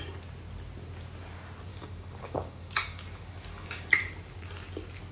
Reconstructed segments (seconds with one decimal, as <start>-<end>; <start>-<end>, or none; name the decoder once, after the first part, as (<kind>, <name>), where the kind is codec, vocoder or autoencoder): 1.7-3.9 (codec, DAC)

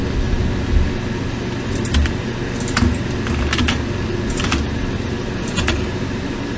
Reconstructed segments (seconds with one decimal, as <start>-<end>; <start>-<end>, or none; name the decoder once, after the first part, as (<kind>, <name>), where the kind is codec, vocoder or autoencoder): none

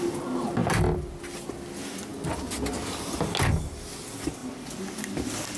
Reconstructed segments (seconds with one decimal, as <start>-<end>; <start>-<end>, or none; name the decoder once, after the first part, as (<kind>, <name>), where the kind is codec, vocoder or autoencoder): none

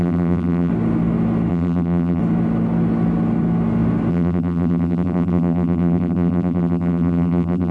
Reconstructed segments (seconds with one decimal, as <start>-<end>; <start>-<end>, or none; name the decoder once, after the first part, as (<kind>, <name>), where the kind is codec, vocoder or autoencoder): 0.0-0.7 (vocoder, BigVGAN v2); 1.5-2.2; 4.1-7.7

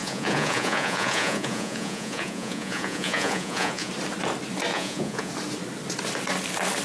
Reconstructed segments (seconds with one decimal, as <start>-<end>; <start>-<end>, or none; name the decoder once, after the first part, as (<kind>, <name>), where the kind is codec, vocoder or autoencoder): 0.0-3.9 (vocoder, Vocos); 4.7-5.3

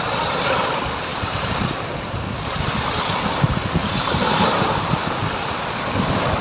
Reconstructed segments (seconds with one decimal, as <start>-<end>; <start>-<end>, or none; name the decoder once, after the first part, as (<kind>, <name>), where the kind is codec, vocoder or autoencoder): 1.1-1.6 (vocoder, BigVGAN v2); 3.8-4.6

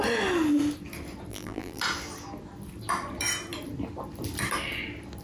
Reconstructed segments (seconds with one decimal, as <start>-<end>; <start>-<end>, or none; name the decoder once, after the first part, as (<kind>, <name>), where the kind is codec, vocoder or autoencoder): 1.3-1.8 (vocoder, BigVGAN v2)

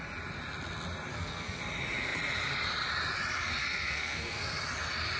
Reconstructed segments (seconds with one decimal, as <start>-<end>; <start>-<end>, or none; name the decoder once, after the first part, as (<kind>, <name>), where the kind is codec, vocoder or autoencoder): 1.1-1.6 (codec, SNAC); 3.6-4.4